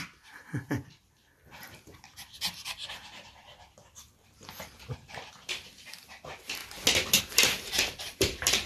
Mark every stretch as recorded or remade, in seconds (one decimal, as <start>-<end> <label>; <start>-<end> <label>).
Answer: 0.0-0.4 remade; 0.4-1.5 recorded; 1.5-6.6 remade; 6.6-7.2 recorded; 7.2-8.7 remade